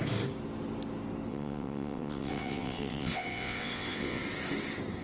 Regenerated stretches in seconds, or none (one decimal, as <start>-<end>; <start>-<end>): 1.3-4.2